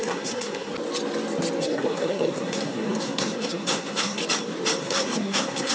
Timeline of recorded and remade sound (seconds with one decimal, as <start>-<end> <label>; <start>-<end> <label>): 0.0-0.7 remade; 0.7-1.6 recorded; 1.6-4.2 remade; 4.2-4.8 recorded; 4.8-5.7 remade

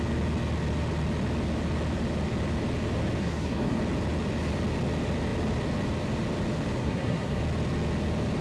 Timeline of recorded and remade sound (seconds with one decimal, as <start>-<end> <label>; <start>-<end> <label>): 0.0-3.2 recorded; 3.2-3.8 remade; 3.8-6.8 recorded; 6.8-7.4 remade; 7.4-8.4 recorded

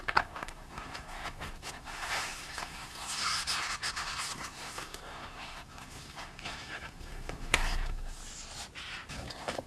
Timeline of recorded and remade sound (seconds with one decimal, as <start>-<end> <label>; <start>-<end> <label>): 0.0-8.2 remade; 8.2-9.1 recorded; 9.1-9.7 remade